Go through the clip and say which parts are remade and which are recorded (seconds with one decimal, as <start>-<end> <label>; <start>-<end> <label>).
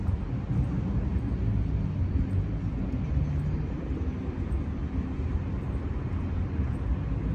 0.0-7.3 recorded